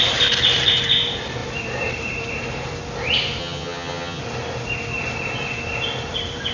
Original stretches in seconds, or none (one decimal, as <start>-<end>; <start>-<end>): 0.0-3.4; 4.2-6.5